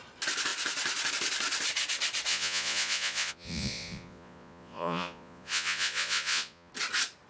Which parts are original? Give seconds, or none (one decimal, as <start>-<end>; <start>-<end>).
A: 0.0-2.3; 6.7-7.3